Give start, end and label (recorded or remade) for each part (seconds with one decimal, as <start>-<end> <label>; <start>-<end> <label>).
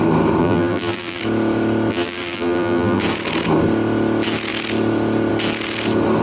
0.0-0.4 recorded; 0.4-1.2 remade; 1.2-1.9 recorded; 1.9-3.0 remade; 3.0-6.2 recorded